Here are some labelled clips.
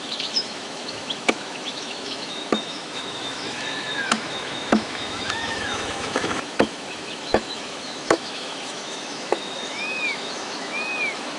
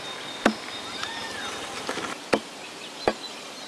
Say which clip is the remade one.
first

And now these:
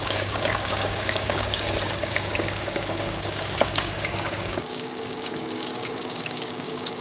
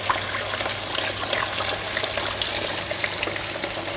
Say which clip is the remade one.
first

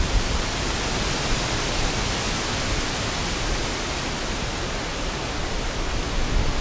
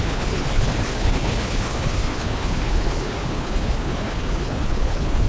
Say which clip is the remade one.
second